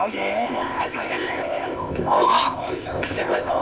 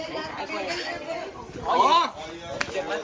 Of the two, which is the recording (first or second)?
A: second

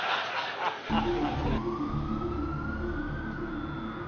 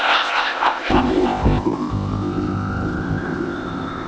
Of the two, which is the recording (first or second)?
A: first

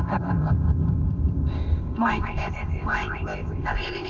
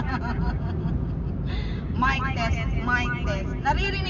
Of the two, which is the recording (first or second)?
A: second